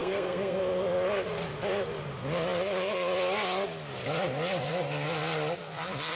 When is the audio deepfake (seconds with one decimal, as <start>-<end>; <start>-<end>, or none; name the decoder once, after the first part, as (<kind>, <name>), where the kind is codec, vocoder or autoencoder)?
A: 0.0-0.6 (codec, SNAC)